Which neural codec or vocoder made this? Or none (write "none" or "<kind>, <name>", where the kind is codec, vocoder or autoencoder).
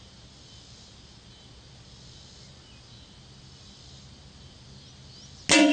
none